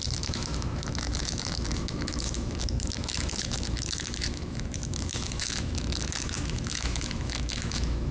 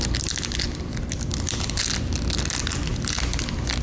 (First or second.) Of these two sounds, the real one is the second